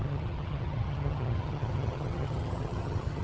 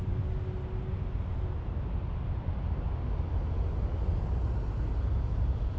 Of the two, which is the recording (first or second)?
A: second